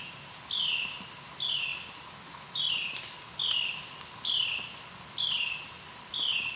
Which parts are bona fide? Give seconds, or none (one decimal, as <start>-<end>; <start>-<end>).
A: 0.0-6.6